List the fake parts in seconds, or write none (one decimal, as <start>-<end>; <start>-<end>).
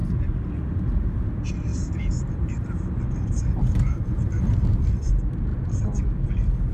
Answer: 0.0-0.5; 1.7-5.1; 5.5-6.0